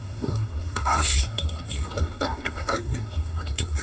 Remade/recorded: remade